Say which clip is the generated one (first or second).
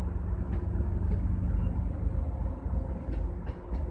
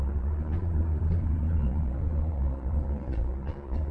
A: second